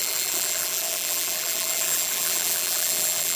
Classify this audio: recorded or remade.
remade